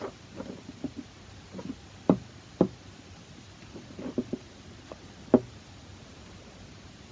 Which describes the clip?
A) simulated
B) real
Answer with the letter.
B